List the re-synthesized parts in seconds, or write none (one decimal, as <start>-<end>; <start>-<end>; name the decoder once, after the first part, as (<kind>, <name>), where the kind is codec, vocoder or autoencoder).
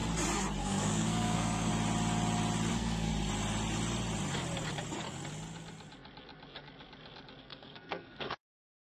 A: 0.6-1.7 (codec, SNAC); 2.7-3.1; 7.4-8.8